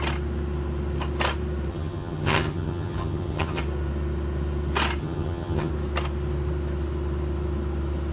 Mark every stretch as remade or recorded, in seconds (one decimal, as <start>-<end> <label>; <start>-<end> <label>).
0.0-1.7 recorded; 1.7-3.6 remade; 3.6-5.0 recorded; 5.0-5.7 remade; 5.7-8.1 recorded